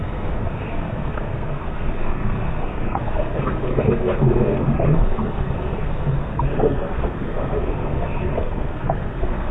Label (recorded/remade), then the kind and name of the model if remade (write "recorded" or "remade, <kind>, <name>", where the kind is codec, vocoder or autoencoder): remade, codec, SNAC